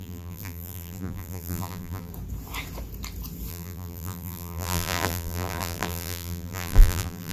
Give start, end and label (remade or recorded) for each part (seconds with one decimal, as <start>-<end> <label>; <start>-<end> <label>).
0.0-2.1 remade; 2.1-3.5 recorded; 3.5-7.3 remade